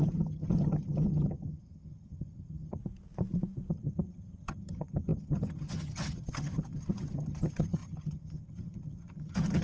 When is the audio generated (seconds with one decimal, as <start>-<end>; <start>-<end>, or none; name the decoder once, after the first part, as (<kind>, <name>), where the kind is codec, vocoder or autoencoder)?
0.0-2.8 (vocoder, HiFi-GAN); 3.7-9.6